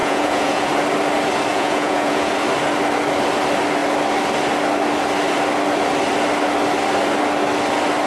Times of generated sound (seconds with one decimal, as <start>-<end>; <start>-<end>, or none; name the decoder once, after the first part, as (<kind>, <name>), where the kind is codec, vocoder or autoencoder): 0.0-0.7 (vocoder, Vocos); 1.5-2.3